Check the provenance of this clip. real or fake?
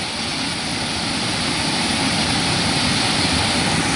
real